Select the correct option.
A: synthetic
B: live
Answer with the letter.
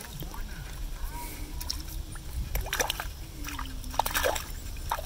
B